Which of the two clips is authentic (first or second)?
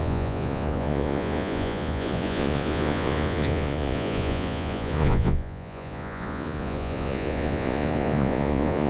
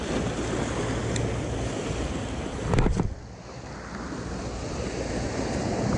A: second